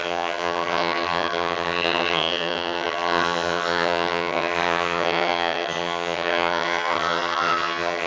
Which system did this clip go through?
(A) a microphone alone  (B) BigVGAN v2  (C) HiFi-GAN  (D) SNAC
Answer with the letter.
C